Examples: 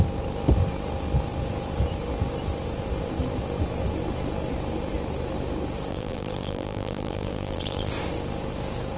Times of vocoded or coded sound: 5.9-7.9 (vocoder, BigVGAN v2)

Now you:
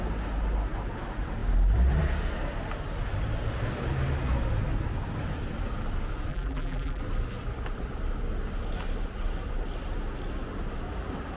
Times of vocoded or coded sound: 6.3-7.0 (vocoder, BigVGAN v2)

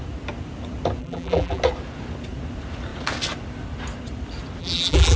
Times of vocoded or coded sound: 1.0-1.6 (vocoder, BigVGAN v2); 4.6-5.2